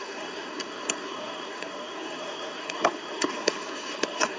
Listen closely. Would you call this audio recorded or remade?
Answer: remade